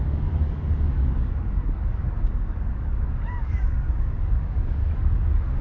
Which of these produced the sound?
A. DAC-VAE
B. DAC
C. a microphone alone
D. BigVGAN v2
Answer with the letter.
B